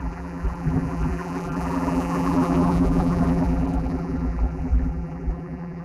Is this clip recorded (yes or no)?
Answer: no